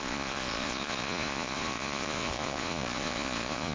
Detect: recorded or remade remade